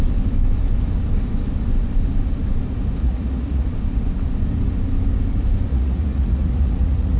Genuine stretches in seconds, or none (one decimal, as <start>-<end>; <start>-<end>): 0.0-3.0; 3.7-5.7